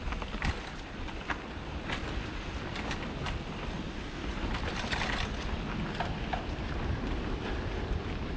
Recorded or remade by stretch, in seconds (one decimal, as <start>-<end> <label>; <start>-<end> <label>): 0.0-8.4 recorded